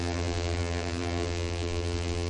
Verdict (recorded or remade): remade